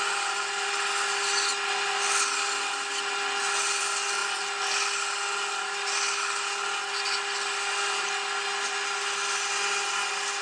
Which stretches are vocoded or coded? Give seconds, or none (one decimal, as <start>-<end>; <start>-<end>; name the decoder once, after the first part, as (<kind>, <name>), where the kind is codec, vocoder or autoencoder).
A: none